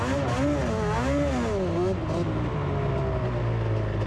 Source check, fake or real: real